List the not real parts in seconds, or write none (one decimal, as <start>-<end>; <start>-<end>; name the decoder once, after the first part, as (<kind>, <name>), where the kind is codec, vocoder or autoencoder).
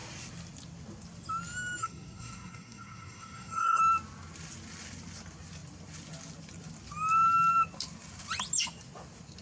1.8-3.8 (codec, SNAC)